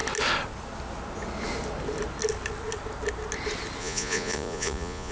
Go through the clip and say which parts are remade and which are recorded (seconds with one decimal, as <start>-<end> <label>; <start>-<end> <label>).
0.0-3.8 recorded; 3.8-5.1 remade